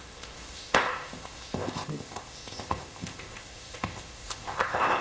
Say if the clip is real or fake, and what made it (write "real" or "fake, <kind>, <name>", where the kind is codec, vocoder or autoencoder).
fake, codec, ZipCodec